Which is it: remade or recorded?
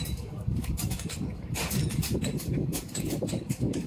remade